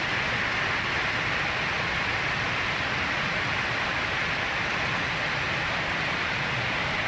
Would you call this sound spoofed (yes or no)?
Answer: no